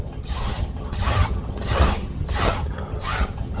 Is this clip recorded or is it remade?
remade